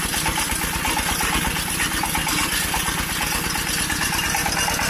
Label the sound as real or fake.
real